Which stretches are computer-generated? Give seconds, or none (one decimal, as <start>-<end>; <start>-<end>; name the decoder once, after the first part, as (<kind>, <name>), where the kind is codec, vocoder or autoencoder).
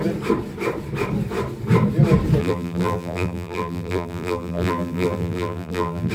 2.4-6.1 (vocoder, BigVGAN v2)